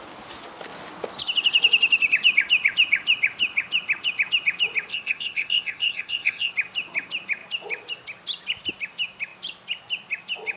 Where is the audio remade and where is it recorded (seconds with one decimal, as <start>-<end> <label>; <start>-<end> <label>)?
0.0-4.9 recorded; 4.9-6.5 remade; 6.5-10.6 recorded